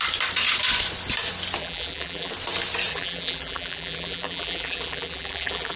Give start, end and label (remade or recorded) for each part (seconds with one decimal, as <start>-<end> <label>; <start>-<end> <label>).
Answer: 0.0-1.6 recorded; 1.6-2.3 remade; 2.3-2.9 recorded; 2.9-5.8 remade